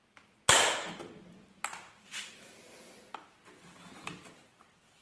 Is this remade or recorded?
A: recorded